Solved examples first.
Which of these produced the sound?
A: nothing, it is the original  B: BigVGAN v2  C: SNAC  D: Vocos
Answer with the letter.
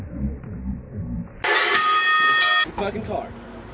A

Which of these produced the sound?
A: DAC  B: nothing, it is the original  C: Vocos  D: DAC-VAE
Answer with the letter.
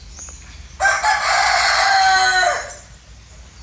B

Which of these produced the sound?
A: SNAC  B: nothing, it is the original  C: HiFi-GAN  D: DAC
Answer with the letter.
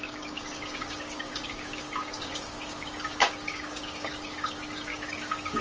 D